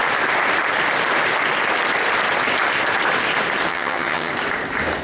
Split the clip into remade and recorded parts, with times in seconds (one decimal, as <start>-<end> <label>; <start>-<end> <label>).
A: 0.0-3.7 recorded; 3.7-4.3 remade; 4.3-5.0 recorded